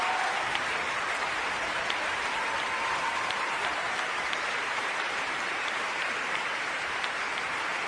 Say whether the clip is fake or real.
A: fake